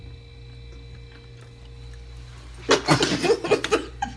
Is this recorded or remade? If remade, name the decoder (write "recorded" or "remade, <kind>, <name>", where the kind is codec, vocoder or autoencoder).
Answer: recorded